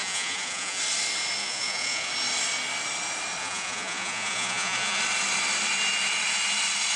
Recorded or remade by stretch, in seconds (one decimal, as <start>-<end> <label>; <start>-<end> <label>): 0.0-0.8 remade; 0.8-1.4 recorded; 1.4-2.1 remade; 2.1-3.4 recorded; 3.4-5.0 remade; 5.0-7.0 recorded

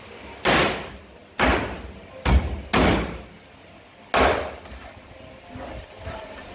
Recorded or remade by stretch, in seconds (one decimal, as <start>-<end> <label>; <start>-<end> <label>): 0.0-6.5 recorded

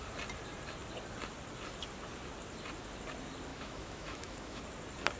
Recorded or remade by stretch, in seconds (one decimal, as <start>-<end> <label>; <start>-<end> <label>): 0.0-3.5 recorded; 3.5-4.6 remade; 4.6-5.2 recorded

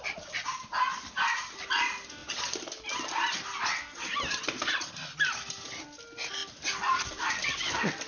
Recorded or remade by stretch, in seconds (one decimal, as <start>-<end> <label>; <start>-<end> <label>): 0.0-2.2 remade; 2.2-6.0 recorded; 6.0-8.1 remade

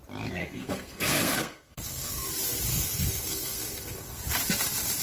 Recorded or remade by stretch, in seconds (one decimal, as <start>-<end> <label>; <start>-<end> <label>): 0.0-0.4 recorded; 0.4-2.3 remade; 2.3-2.7 recorded; 2.7-4.2 remade; 4.2-5.0 recorded

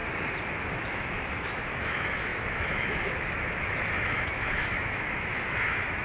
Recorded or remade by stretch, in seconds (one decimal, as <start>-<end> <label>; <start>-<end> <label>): 0.0-0.7 recorded; 0.7-6.0 remade

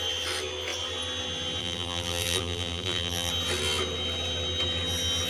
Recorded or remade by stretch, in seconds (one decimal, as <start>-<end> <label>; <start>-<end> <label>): 0.0-1.6 recorded; 1.6-3.3 remade; 3.3-5.3 recorded

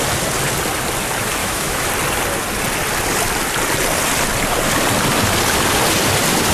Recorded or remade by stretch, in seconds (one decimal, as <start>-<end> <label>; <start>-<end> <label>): 0.0-1.4 recorded; 1.4-1.9 remade; 1.9-6.5 recorded